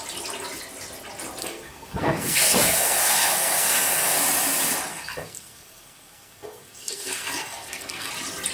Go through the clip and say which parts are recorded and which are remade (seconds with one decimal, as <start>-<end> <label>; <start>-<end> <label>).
0.0-1.4 recorded; 1.4-4.2 remade; 4.2-4.9 recorded; 4.9-8.1 remade; 8.1-8.5 recorded